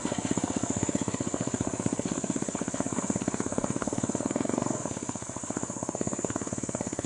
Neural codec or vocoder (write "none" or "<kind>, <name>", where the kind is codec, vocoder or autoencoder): codec, SNAC